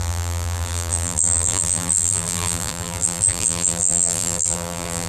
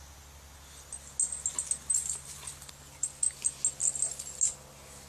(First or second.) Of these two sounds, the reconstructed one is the first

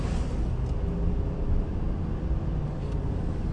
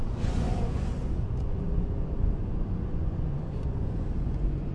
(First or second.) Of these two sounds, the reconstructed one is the second